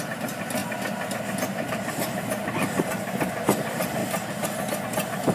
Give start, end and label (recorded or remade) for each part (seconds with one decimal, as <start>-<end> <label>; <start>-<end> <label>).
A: 0.0-4.0 remade; 4.0-4.8 recorded; 4.8-5.3 remade